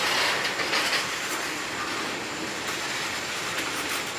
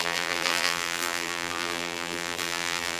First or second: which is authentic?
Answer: first